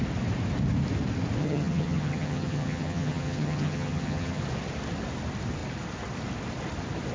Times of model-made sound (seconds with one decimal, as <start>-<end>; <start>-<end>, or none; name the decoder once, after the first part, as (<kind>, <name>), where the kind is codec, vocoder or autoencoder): 1.4-4.4 (vocoder, HiFi-GAN)